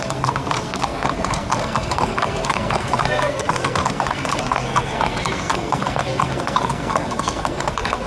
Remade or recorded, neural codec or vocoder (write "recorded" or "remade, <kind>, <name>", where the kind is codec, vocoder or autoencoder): remade, codec, SNAC